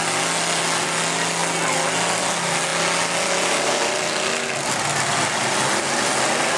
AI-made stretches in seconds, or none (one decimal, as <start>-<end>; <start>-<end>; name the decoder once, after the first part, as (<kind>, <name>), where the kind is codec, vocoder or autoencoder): none